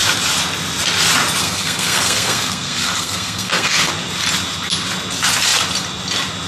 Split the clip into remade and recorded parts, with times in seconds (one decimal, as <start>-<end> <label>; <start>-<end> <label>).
0.0-1.4 recorded; 1.4-3.9 remade; 3.9-6.5 recorded